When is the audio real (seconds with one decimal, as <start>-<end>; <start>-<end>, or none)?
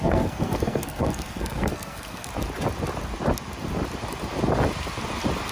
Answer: 2.3-5.5